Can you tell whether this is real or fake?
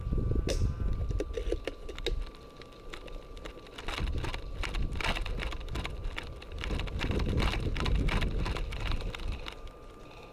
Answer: real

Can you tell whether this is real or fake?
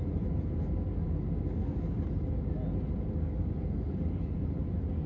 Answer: real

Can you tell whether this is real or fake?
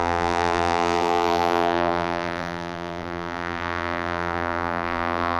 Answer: fake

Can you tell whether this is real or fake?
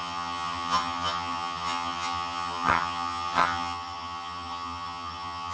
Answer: fake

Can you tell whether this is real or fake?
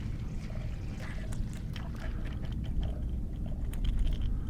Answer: real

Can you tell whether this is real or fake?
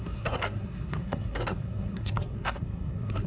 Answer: fake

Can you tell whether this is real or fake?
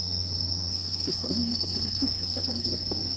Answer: fake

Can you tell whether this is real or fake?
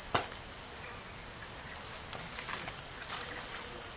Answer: real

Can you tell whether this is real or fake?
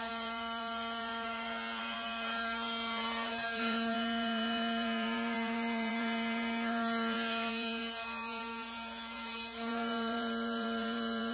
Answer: fake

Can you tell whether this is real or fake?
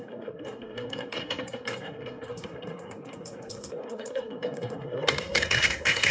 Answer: fake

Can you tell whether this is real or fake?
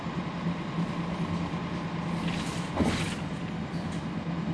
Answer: real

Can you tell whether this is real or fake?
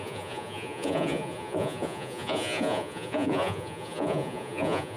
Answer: fake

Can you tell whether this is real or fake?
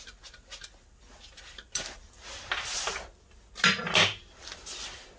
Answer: real